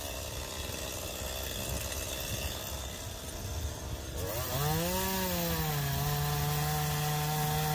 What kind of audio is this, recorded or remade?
recorded